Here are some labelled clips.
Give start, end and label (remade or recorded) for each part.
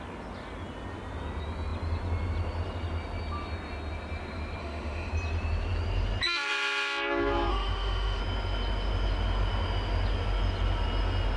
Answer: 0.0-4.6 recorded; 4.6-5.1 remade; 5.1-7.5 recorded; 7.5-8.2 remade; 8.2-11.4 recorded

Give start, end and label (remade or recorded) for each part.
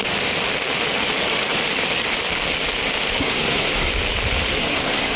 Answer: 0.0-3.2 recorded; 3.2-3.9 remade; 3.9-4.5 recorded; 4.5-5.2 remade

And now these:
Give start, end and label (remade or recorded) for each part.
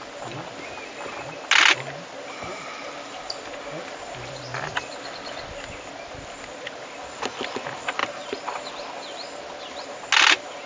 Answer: 0.0-8.0 recorded; 8.0-8.7 remade; 8.7-10.7 recorded